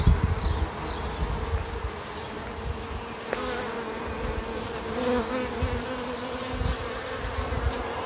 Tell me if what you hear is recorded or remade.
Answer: recorded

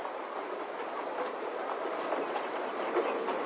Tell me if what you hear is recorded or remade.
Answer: recorded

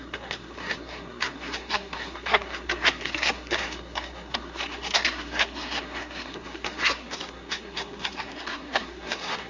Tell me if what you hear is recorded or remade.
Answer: remade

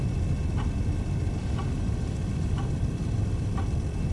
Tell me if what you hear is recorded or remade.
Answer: recorded